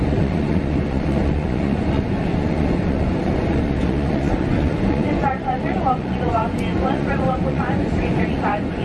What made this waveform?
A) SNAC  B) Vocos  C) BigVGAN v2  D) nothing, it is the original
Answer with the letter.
B